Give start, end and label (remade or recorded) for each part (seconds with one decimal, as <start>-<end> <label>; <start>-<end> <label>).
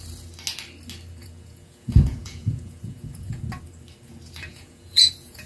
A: 0.0-1.2 recorded; 1.2-3.4 remade; 3.4-4.5 recorded; 4.5-5.5 remade